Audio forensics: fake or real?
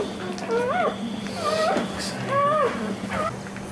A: real